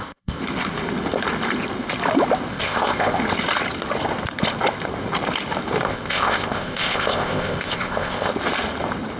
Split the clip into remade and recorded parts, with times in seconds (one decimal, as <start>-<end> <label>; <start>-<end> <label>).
0.0-0.4 remade; 0.4-2.5 recorded; 2.5-3.2 remade; 3.2-5.9 recorded; 5.9-8.3 remade; 8.3-9.2 recorded